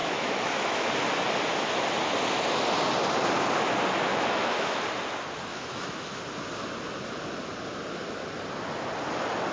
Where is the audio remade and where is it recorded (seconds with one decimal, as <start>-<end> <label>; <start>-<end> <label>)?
0.0-0.9 remade; 0.9-4.1 recorded; 4.1-4.8 remade; 4.8-5.5 recorded; 5.5-6.2 remade; 6.2-9.5 recorded